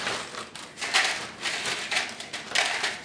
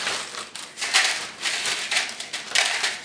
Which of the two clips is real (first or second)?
first